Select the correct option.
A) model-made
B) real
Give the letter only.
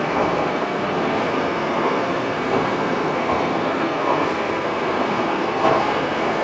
A